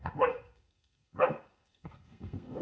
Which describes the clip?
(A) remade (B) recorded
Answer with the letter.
A